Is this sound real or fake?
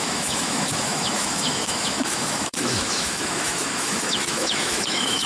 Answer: fake